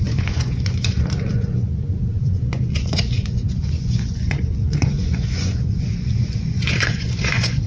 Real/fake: fake